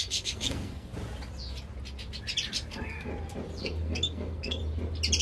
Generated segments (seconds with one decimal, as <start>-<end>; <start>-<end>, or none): 0.0-0.9; 2.7-3.1; 3.6-4.6